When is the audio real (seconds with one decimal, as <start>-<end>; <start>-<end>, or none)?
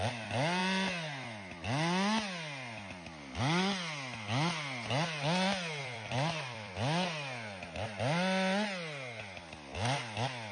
0.0-5.8; 6.7-10.5